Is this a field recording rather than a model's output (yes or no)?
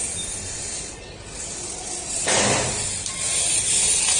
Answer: yes